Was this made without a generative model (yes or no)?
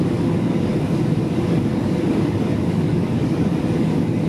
no